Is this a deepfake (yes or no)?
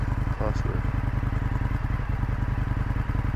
no